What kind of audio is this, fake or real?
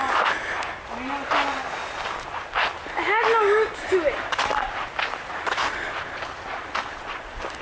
real